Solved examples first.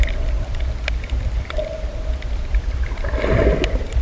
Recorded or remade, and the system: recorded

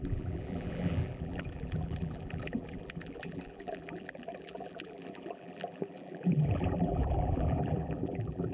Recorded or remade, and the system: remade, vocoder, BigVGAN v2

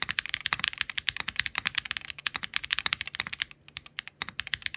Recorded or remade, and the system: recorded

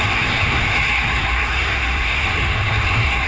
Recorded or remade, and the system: remade, codec, SNAC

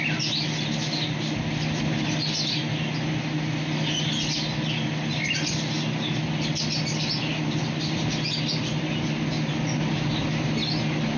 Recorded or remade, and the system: recorded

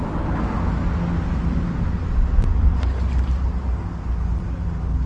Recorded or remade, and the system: recorded